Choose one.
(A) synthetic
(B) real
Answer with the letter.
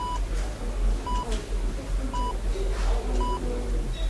B